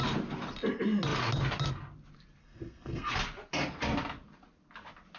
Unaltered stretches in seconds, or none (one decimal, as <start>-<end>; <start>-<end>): 0.0-2.4; 3.1-5.2